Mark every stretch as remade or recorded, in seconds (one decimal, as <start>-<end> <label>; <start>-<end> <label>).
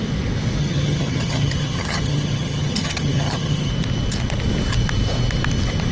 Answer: 0.0-0.6 recorded; 0.6-3.7 remade; 3.7-5.9 recorded